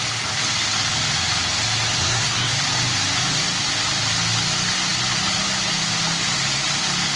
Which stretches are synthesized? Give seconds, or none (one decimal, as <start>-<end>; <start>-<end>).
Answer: 2.0-2.5